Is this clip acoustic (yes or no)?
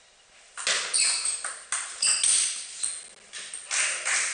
yes